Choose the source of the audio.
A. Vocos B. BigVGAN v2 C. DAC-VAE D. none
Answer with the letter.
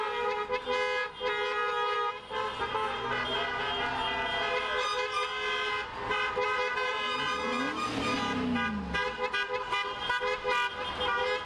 D